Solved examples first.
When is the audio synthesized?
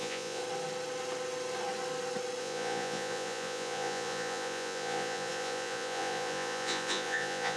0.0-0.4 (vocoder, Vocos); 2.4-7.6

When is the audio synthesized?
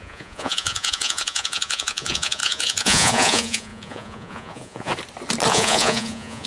0.0-4.9 (vocoder, Vocos); 5.5-6.5